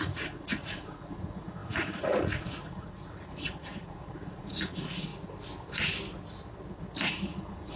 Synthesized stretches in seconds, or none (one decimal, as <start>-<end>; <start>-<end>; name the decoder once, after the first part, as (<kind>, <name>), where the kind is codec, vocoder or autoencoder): 0.0-5.1 (vocoder, Vocos); 7.1-7.8